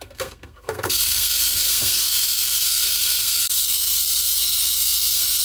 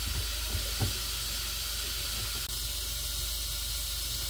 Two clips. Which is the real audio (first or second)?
second